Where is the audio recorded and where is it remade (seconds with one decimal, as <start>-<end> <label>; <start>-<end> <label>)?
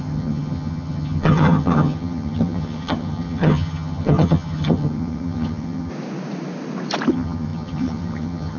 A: 0.0-5.9 remade; 5.9-7.1 recorded; 7.1-8.6 remade